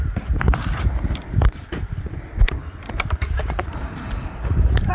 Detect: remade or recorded remade